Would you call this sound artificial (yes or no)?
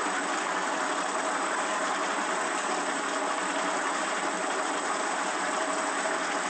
no